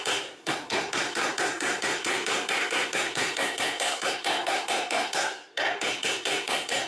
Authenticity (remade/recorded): remade